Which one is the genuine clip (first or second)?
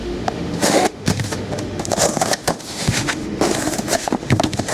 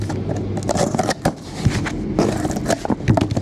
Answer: second